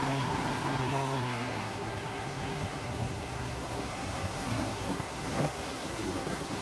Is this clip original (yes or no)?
no